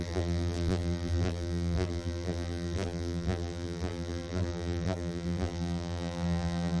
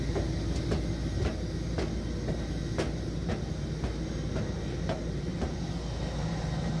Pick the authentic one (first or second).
second